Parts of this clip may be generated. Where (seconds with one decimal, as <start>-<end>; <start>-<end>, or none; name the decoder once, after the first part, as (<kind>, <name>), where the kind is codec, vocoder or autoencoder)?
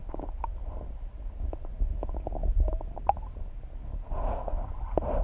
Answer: none